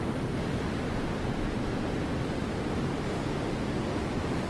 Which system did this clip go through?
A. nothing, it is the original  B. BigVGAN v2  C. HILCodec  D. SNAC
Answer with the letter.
A